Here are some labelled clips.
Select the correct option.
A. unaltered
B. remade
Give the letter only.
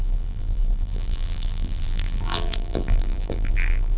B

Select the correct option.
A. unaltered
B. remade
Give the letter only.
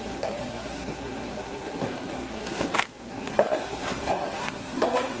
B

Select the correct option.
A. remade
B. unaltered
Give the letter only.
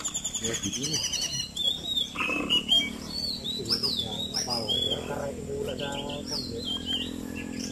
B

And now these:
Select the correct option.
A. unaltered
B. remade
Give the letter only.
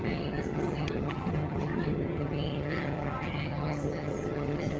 B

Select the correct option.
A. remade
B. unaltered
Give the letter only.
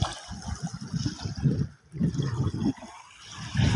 B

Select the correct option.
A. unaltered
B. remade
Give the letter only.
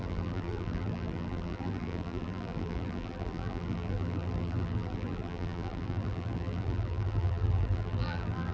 B